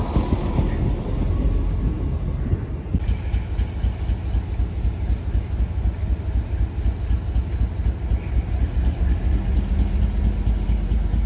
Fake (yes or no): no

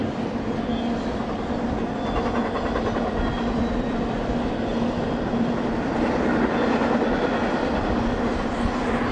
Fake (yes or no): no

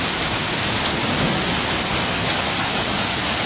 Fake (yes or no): no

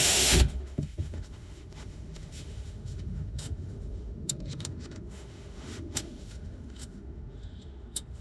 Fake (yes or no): yes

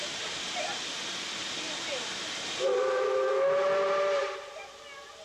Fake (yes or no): no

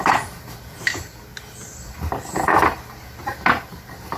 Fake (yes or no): no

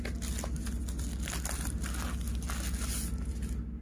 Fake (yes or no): no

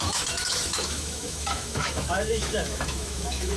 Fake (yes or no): yes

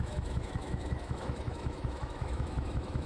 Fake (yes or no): yes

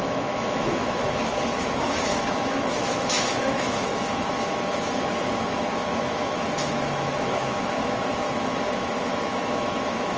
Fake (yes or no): yes